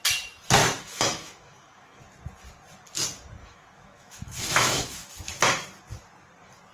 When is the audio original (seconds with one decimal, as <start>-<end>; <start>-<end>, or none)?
0.0-0.6; 2.0-3.4; 5.1-6.7